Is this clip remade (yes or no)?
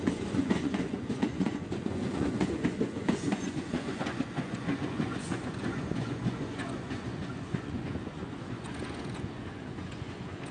yes